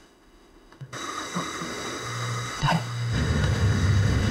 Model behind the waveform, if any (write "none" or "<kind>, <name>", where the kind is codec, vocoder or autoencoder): autoencoder, DAC-VAE